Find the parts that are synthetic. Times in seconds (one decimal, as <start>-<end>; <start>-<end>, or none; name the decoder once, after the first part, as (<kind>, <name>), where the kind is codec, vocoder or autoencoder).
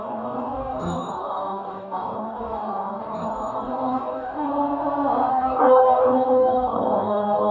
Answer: 0.0-4.5 (codec, DAC); 5.3-7.5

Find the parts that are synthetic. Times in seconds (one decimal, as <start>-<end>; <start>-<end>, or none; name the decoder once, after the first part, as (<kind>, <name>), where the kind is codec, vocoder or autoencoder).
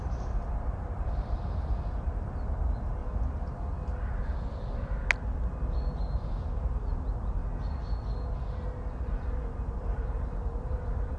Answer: 0.0-3.0 (vocoder, BigVGAN v2); 6.0-7.4; 9.7-11.2